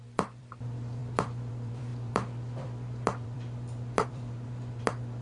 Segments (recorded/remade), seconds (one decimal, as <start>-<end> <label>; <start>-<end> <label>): 0.0-5.2 remade